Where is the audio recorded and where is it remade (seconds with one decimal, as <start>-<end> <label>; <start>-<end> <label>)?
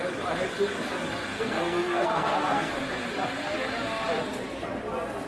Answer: 0.0-1.3 recorded; 1.3-2.7 remade; 2.7-5.3 recorded